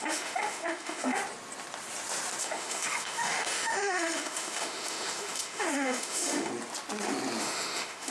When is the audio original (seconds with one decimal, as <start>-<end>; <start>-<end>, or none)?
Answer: 1.2-2.4; 6.5-7.4